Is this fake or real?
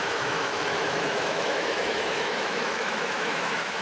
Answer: fake